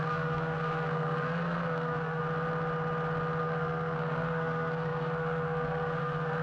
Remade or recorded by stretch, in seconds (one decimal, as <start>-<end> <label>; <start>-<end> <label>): 0.0-2.2 remade; 2.2-3.4 recorded; 3.4-6.4 remade

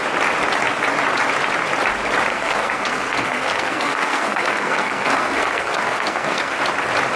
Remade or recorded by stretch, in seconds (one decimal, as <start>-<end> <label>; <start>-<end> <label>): 0.0-2.3 recorded; 2.3-6.6 remade; 6.6-7.2 recorded

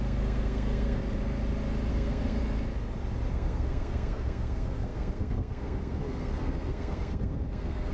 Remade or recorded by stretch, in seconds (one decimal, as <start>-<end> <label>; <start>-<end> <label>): 0.0-1.0 remade; 1.0-1.9 recorded; 1.9-2.4 remade; 2.4-3.3 recorded; 3.3-7.9 remade

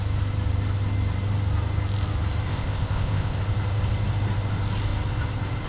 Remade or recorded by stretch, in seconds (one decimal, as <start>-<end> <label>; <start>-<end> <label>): 0.0-2.5 recorded; 2.5-3.4 remade; 3.4-5.7 recorded

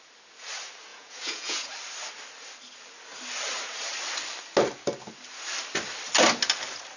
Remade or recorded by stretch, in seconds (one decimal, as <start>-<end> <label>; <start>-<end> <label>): 0.0-0.9 recorded; 0.9-1.7 remade; 1.7-7.0 recorded

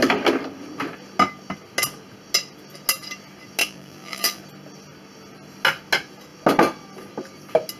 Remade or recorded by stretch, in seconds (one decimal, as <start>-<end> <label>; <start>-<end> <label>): 0.0-3.6 recorded; 3.6-4.4 remade; 4.4-7.8 recorded

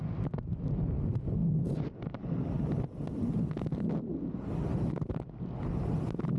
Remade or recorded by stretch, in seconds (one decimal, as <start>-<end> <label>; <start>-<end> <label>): 0.0-6.4 recorded

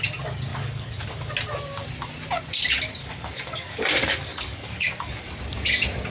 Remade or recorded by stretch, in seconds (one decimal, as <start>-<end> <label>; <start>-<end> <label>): 0.0-0.5 recorded; 0.5-1.3 remade; 1.3-3.0 recorded; 3.0-5.3 remade; 5.3-6.1 recorded